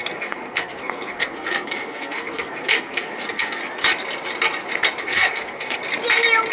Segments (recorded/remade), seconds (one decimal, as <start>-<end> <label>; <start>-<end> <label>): 0.0-3.6 remade; 3.6-5.0 recorded; 5.0-5.8 remade; 5.8-6.5 recorded

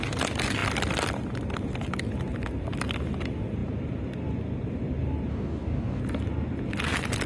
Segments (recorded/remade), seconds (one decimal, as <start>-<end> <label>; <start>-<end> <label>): 0.0-5.3 recorded; 5.3-6.0 remade; 6.0-7.3 recorded

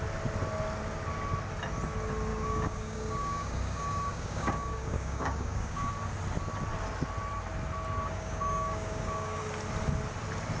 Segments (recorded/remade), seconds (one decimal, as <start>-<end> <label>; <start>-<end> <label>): 0.0-2.3 recorded; 2.3-5.9 remade; 5.9-8.0 recorded; 8.0-9.4 remade; 9.4-10.6 recorded